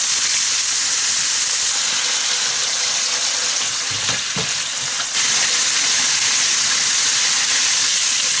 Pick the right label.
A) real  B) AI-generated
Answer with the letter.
A